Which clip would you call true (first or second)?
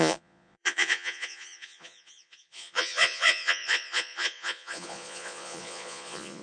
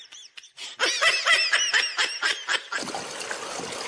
second